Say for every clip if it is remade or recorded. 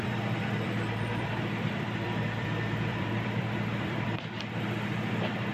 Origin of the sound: remade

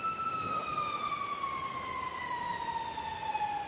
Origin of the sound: recorded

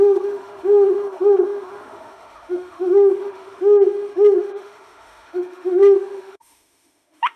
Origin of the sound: remade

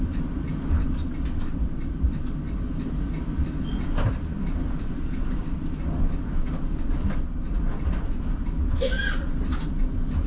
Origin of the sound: recorded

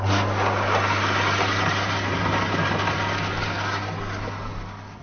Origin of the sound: recorded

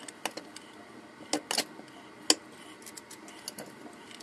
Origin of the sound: recorded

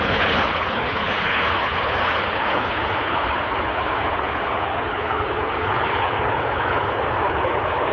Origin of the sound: remade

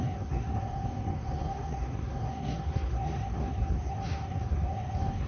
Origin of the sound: remade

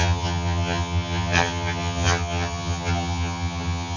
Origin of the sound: remade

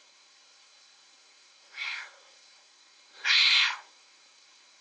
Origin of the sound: remade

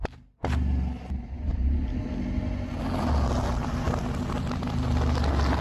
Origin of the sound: recorded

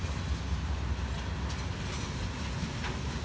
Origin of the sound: recorded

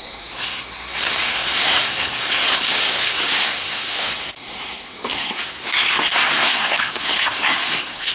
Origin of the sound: remade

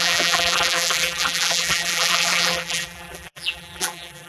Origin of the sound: remade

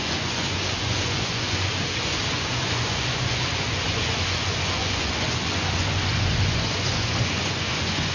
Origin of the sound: remade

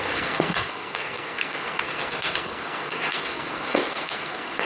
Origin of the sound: remade